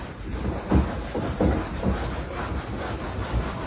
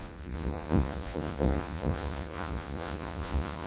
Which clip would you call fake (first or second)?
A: second